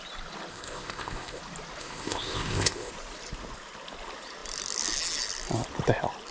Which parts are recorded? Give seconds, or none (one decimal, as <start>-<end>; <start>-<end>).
0.0-0.5; 1.4-1.8; 2.9-6.3